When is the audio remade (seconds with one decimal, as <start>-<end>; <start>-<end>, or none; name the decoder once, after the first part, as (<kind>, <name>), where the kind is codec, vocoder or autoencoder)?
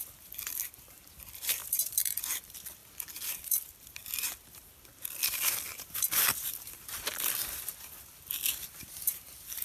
0.0-9.6 (vocoder, BigVGAN v2)